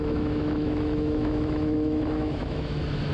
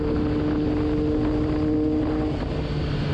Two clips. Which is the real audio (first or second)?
second